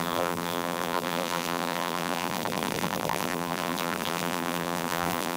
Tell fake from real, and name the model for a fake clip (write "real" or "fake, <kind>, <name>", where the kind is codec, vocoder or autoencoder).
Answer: fake, vocoder, BigVGAN v2